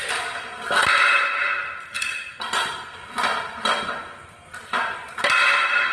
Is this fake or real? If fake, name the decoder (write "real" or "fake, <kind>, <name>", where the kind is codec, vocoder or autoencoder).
real